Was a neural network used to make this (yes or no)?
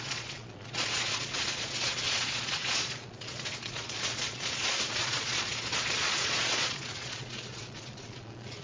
yes